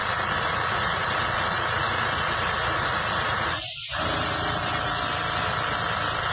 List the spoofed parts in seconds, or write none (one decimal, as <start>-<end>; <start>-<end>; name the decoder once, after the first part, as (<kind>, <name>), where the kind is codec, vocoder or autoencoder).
0.0-3.8 (vocoder, Vocos)